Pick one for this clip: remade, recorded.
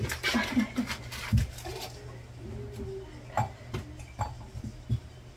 recorded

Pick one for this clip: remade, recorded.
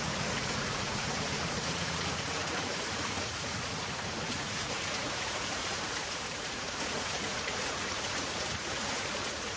remade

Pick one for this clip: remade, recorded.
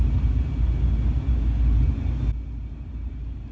recorded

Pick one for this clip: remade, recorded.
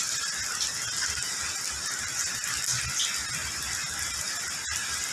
recorded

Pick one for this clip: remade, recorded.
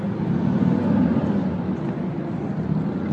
recorded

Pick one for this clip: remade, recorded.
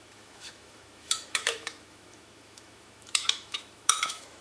remade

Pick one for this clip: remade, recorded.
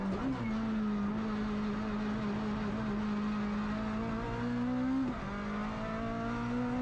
recorded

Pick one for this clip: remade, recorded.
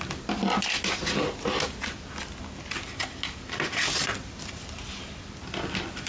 recorded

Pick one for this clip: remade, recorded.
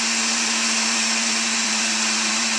remade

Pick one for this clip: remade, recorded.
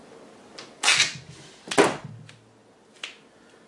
recorded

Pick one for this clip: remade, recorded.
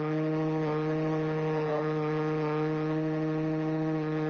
remade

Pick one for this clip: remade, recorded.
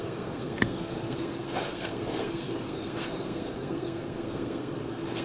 remade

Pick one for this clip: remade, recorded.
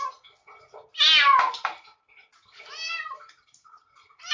recorded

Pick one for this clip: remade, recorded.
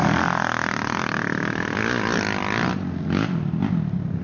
remade